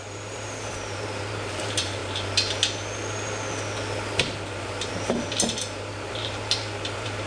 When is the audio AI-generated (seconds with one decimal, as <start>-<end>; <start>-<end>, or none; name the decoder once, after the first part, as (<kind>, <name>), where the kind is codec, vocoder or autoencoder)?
0.0-2.0 (vocoder, BigVGAN v2); 4.9-7.3